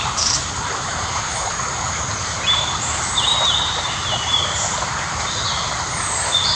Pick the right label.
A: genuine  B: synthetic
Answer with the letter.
B